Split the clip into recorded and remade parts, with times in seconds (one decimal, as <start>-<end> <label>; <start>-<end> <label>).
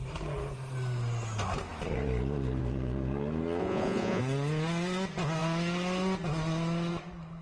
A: 0.0-3.6 recorded; 3.6-4.2 remade; 4.2-7.4 recorded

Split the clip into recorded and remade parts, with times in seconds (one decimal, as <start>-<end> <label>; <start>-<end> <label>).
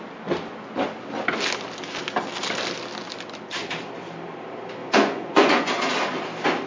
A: 0.0-4.8 recorded; 4.8-5.7 remade; 5.7-6.7 recorded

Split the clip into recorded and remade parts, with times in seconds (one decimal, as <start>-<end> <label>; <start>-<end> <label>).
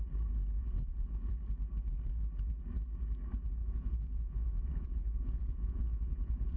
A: 0.0-0.6 recorded; 0.6-1.3 remade; 1.3-3.6 recorded; 3.6-6.6 remade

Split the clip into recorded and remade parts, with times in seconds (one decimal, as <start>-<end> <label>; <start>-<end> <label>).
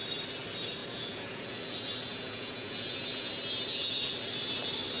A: 0.0-0.8 recorded; 0.8-1.5 remade; 1.5-2.1 recorded; 2.1-3.3 remade; 3.3-5.0 recorded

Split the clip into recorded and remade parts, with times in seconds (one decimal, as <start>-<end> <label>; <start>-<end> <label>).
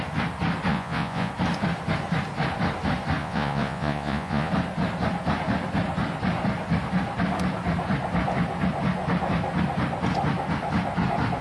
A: 0.0-0.7 recorded; 0.7-1.3 remade; 1.3-3.2 recorded; 3.2-4.5 remade; 4.5-11.4 recorded